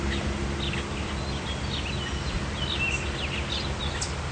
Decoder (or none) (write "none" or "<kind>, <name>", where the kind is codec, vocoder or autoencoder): none